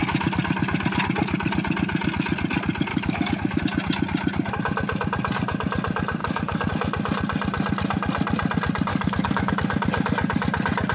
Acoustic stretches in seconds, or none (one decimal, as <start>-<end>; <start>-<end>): 0.0-2.9; 3.6-6.2; 6.7-8.9; 9.5-10.9